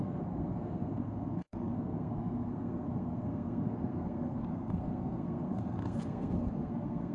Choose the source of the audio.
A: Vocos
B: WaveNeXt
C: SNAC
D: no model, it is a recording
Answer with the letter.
C